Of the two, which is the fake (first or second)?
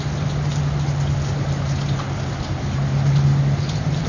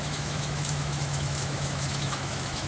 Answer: second